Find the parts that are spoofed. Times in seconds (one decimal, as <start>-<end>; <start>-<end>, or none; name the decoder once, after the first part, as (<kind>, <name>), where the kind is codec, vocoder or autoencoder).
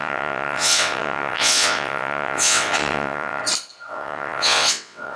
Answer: 0.0-3.4 (vocoder, WaveNeXt); 3.9-5.2